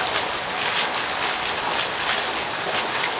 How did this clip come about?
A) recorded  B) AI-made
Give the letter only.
A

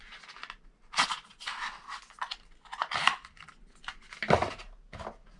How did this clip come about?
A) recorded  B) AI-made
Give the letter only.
A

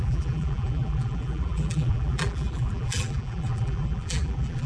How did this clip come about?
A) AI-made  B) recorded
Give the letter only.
A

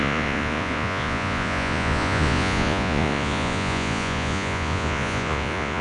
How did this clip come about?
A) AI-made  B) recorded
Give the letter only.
A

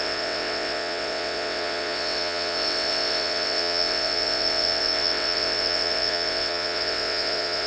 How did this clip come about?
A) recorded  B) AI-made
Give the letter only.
B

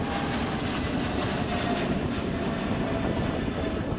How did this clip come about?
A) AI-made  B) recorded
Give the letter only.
B